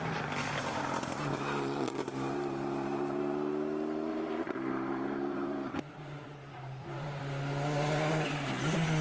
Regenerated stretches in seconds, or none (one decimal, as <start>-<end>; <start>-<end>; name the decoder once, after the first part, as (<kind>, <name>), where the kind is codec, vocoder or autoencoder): 4.1-7.2 (vocoder, BigVGAN v2)